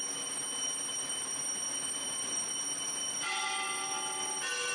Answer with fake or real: real